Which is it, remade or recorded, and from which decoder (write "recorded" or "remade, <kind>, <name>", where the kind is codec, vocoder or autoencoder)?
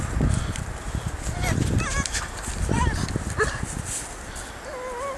recorded